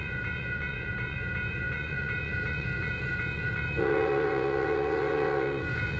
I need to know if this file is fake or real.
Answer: fake